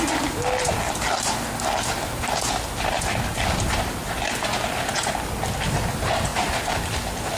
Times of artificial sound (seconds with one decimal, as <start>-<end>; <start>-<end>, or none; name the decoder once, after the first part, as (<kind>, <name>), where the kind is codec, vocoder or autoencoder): 6.3-6.8 (vocoder, BigVGAN v2)